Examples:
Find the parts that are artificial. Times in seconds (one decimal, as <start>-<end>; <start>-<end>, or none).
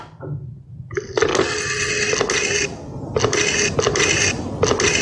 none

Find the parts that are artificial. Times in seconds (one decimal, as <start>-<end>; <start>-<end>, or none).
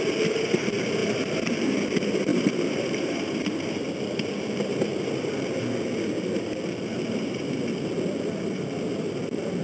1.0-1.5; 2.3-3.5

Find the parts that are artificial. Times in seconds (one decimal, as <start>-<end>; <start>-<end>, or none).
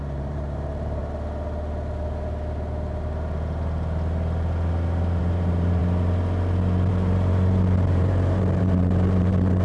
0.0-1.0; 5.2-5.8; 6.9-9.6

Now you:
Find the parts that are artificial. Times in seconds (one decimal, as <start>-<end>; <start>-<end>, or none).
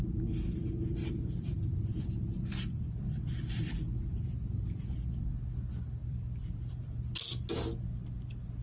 1.0-5.1; 6.0-7.0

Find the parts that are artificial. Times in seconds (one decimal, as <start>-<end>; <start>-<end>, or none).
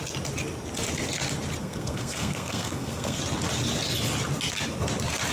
1.6-3.2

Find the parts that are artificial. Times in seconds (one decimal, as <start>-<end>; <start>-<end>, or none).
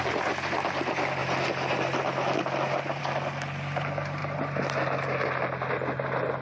none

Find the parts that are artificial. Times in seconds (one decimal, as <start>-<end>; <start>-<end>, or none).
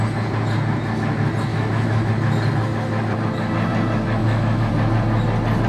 1.5-2.1; 4.2-4.7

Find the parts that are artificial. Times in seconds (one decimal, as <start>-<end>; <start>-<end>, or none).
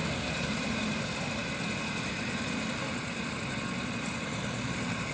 none